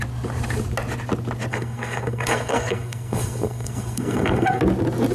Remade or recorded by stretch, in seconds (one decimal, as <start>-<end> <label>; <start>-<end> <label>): 0.0-1.5 recorded; 1.5-4.6 remade; 4.6-5.1 recorded